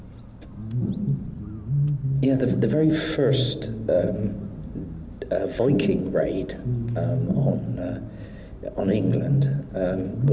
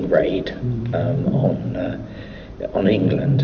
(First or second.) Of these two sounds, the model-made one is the second